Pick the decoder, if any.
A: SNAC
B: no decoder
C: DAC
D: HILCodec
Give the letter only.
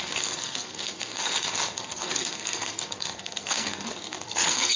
A